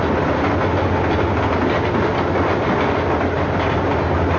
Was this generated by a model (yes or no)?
no